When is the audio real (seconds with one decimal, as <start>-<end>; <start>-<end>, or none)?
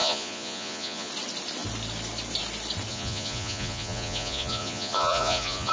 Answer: 1.1-2.9